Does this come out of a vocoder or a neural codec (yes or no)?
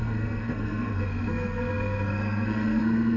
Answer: yes